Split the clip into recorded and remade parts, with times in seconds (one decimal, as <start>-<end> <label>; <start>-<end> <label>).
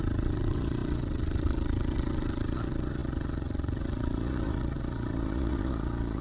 0.0-6.2 remade